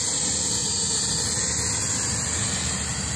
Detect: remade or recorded recorded